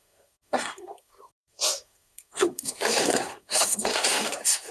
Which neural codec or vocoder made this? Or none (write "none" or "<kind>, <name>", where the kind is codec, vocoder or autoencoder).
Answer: codec, SNAC